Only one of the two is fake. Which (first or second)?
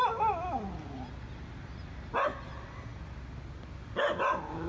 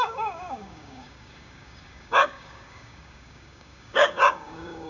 second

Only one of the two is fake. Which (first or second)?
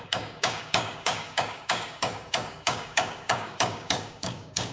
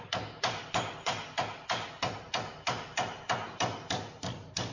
first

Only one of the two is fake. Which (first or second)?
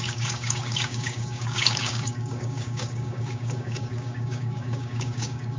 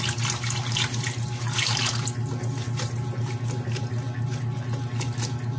first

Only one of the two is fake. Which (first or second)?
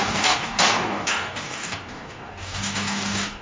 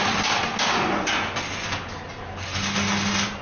first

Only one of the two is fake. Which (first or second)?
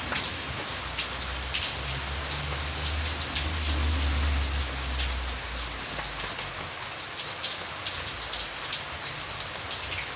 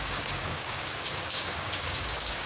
second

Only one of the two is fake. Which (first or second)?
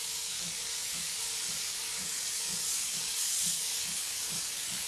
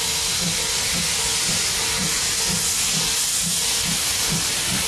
first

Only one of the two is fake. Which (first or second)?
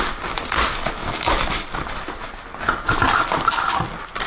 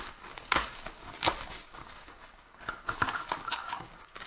second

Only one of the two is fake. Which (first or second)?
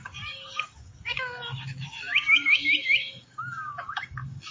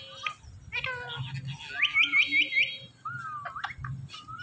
first